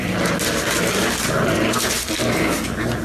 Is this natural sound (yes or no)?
yes